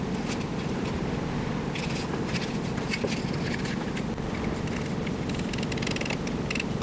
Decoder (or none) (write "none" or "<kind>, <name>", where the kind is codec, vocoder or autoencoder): none